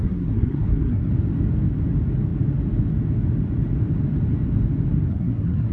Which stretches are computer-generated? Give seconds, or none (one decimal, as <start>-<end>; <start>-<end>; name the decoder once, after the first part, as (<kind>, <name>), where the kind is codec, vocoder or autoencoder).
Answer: 0.0-1.1 (codec, SNAC); 5.1-5.7